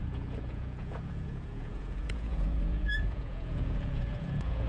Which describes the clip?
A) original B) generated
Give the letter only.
B